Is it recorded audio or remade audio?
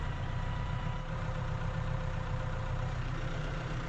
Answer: remade